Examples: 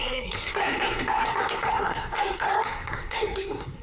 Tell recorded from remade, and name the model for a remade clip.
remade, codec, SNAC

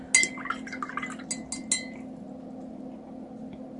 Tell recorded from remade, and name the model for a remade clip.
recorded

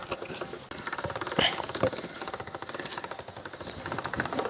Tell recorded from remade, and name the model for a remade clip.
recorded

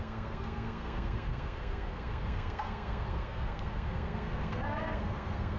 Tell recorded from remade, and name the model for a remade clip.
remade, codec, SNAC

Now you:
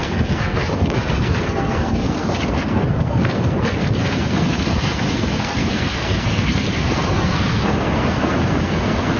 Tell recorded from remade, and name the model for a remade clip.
remade, codec, SNAC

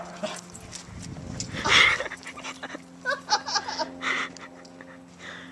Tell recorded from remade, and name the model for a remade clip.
recorded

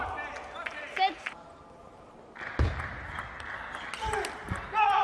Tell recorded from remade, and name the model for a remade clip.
recorded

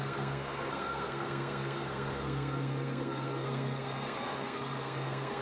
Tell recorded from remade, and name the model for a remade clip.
remade, codec, SNAC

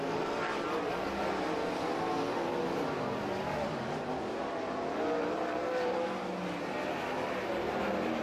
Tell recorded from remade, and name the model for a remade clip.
recorded